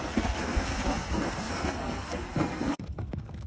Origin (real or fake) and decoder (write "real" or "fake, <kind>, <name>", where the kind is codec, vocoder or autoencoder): fake, codec, SNAC